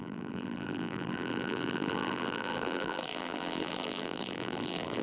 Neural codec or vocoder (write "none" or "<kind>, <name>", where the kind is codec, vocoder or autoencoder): vocoder, BigVGAN v2